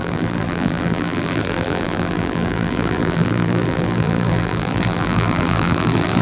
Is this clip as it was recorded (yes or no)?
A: no